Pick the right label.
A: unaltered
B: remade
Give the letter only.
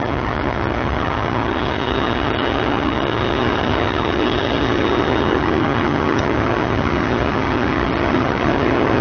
B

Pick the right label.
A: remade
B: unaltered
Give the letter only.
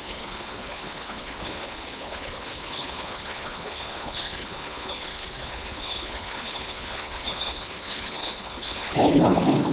A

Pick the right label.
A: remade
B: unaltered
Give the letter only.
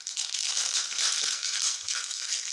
A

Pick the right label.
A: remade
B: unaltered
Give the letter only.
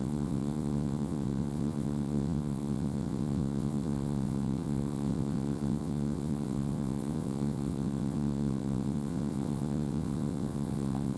A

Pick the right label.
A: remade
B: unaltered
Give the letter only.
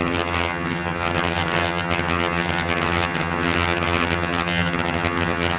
A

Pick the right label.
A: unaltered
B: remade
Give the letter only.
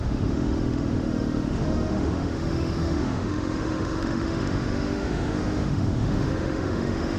B